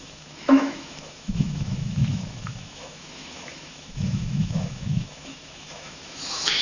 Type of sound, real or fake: fake